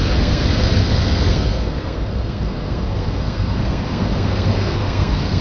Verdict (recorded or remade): remade